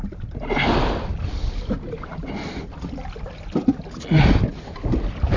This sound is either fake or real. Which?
real